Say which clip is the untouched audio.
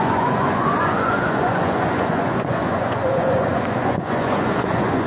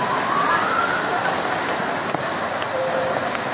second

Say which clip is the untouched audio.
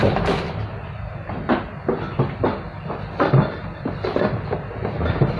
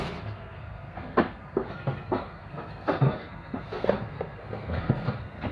first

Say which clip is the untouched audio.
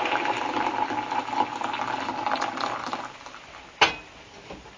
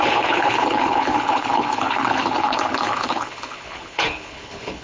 first